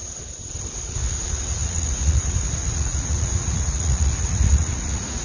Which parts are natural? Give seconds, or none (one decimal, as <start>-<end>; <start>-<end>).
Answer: 0.0-0.8